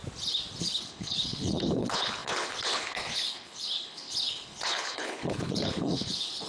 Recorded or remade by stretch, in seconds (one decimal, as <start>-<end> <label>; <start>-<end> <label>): 0.0-0.6 recorded; 0.6-6.5 remade